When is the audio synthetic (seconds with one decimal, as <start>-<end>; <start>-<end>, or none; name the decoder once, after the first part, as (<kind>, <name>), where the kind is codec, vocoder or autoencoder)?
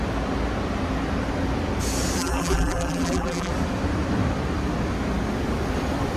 2.2-3.5 (vocoder, BigVGAN v2)